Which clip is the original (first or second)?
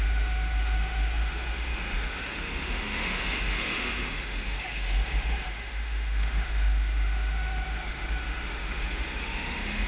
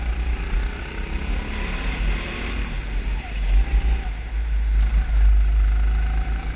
second